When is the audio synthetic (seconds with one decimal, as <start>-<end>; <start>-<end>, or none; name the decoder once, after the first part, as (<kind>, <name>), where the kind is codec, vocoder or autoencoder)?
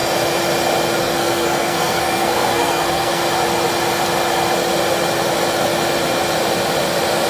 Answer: 1.0-3.2 (codec, SNAC)